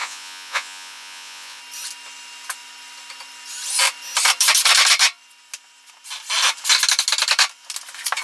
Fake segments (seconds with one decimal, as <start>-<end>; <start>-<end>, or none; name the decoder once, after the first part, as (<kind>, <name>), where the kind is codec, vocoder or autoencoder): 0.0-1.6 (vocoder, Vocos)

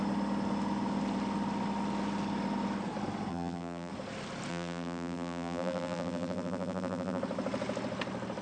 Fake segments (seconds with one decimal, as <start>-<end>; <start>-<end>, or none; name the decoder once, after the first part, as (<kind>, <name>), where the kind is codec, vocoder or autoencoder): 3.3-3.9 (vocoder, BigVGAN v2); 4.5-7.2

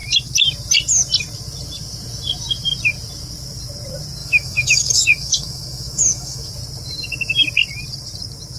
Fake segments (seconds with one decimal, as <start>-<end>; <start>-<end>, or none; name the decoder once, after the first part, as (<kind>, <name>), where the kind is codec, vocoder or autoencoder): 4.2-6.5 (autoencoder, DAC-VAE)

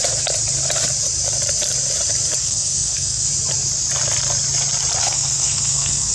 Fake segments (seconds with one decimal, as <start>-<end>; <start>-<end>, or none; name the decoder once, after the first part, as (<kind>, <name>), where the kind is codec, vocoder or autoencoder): 2.4-3.3 (codec, SNAC); 5.0-6.1

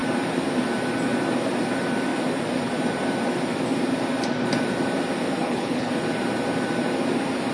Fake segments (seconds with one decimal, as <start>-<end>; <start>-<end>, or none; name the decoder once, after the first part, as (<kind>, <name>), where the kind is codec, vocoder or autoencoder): 5.4-5.9 (codec, HILCodec)

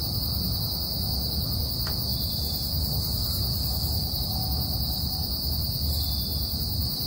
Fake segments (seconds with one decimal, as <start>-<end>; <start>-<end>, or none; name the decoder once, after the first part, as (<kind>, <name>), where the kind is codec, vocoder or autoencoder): none

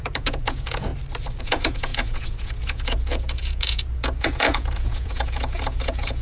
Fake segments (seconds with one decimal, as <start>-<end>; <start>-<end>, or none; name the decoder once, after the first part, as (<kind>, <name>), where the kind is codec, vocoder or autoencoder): 0.0-0.9 (vocoder, Vocos); 1.4-6.2

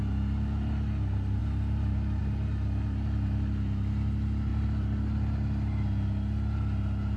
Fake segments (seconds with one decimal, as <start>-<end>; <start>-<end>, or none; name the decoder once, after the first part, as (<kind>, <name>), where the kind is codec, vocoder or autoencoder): none